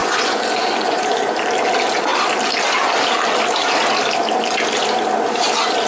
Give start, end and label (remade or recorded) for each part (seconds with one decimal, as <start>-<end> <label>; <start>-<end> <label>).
0.0-1.0 remade; 1.0-5.9 recorded